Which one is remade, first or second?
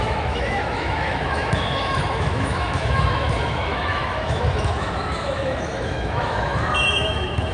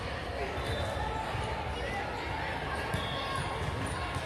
first